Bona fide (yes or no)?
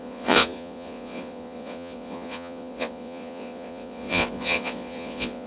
no